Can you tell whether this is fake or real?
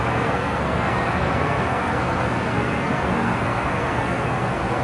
fake